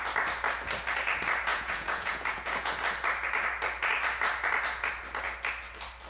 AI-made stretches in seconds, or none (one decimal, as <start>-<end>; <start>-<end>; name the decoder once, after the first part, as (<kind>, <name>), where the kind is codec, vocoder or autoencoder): 1.5-2.7 (vocoder, Vocos)